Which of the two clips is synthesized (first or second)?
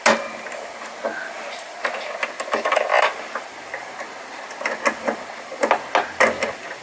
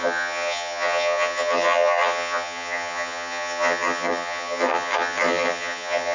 second